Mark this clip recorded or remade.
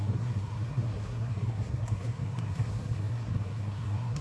remade